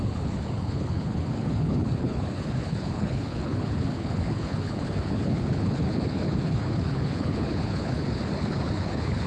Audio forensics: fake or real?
fake